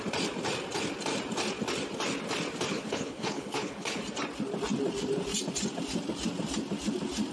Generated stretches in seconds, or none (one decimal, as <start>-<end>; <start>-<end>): 2.7-4.0